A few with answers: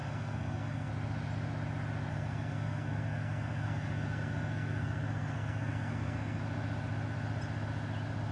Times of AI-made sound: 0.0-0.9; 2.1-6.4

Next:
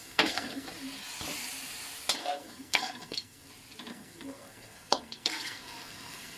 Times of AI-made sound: 0.0-0.7; 2.2-3.5; 3.9-6.4